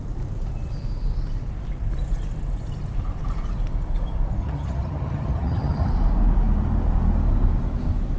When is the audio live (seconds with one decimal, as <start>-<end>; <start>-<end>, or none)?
0.0-4.4; 5.9-8.2